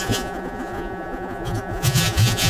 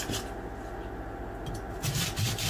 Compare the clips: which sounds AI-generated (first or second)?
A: first